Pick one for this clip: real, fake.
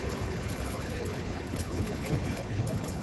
fake